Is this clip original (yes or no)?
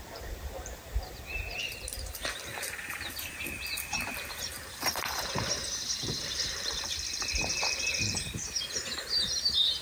no